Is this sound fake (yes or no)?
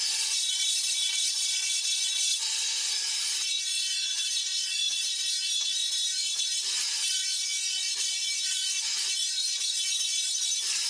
yes